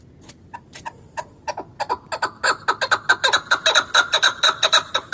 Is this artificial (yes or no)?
no